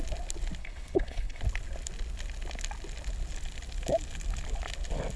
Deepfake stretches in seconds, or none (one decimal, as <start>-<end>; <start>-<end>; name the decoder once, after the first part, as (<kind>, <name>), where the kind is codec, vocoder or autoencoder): 0.6-1.4 (codec, HILCodec)